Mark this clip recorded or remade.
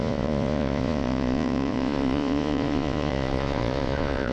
remade